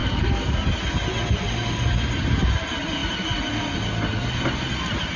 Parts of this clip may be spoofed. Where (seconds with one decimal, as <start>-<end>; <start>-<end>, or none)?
0.0-0.6